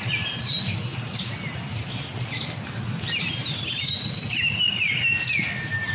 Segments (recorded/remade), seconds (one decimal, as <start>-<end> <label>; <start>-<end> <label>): 0.0-5.9 recorded